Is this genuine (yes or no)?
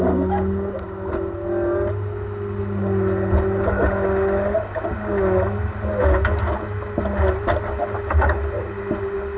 yes